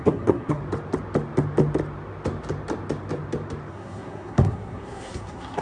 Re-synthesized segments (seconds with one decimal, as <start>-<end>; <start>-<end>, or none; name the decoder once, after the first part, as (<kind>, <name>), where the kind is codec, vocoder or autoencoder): 0.0-0.6 (codec, SNAC); 3.7-5.6